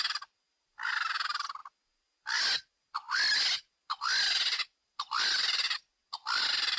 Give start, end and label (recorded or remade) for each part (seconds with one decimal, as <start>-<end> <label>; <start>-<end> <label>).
0.0-6.8 recorded